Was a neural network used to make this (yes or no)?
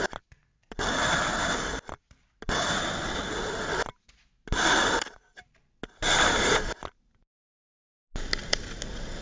no